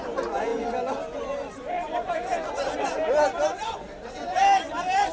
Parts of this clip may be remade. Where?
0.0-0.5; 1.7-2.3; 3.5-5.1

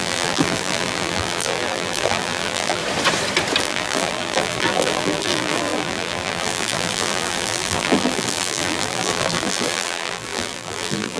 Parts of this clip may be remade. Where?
0.0-2.8; 3.6-11.2

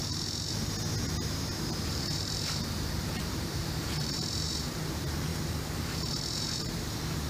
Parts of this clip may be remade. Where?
1.9-7.3

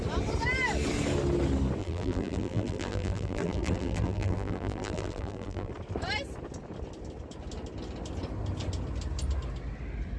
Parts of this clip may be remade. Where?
1.8-5.7